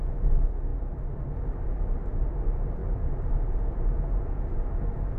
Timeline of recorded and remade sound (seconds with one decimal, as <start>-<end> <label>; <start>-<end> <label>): 0.0-2.8 recorded; 2.8-3.4 remade; 3.4-5.2 recorded